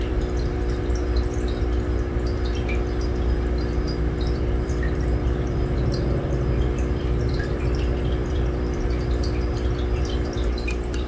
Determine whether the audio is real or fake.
fake